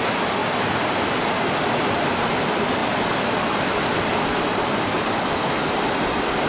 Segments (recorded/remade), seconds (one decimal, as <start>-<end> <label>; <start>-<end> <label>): 0.0-6.5 recorded